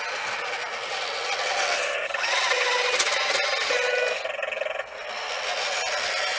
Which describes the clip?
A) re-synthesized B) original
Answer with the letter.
B